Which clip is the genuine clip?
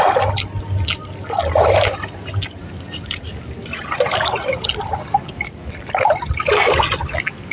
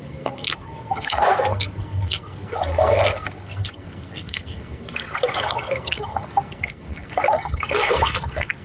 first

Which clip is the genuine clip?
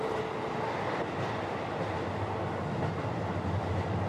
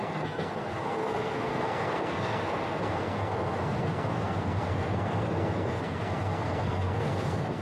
first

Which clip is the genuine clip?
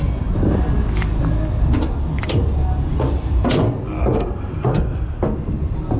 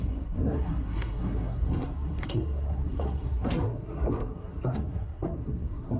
first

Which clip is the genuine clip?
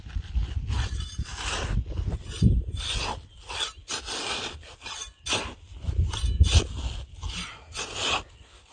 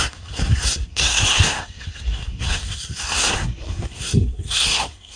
first